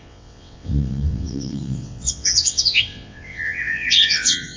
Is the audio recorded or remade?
remade